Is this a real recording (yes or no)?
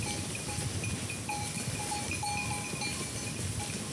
yes